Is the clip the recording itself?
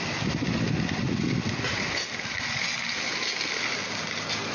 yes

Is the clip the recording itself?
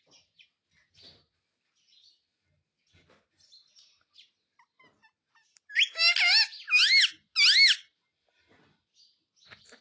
yes